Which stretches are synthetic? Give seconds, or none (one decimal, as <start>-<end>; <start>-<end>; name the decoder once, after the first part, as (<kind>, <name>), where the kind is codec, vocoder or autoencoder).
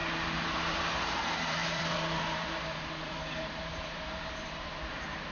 0.5-5.3 (vocoder, BigVGAN v2)